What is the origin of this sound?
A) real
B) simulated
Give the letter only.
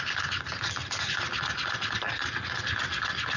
A